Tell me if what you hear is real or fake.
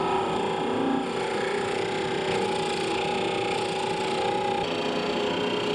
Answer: real